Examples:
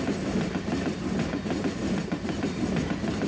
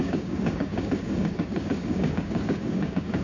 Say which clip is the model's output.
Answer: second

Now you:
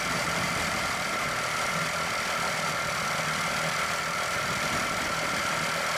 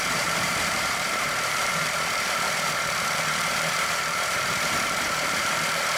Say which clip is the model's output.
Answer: second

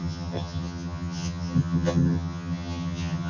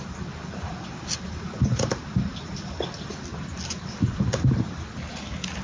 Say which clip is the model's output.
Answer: first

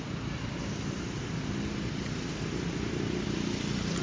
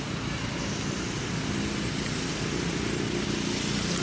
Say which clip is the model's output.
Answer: first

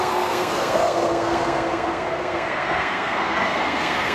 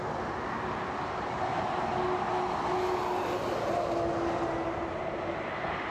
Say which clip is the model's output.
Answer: first